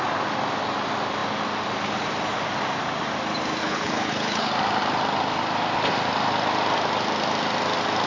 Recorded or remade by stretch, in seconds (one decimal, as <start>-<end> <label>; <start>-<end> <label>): 0.0-3.6 recorded; 3.6-4.5 remade; 4.5-8.1 recorded